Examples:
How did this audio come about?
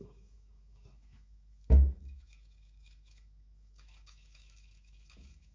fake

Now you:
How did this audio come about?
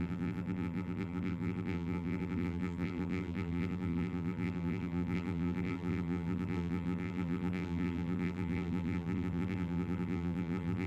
fake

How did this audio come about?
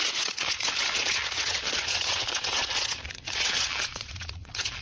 fake